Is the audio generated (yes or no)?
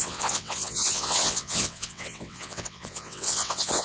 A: yes